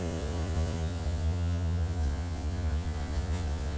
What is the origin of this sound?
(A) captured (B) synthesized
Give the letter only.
B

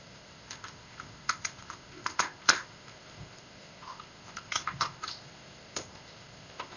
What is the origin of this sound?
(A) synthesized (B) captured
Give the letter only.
A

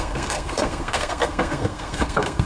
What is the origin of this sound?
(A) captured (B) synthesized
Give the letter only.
B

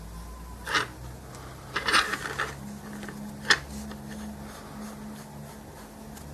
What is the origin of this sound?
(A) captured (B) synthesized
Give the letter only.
A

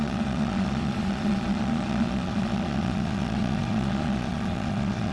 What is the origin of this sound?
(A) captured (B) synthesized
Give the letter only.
B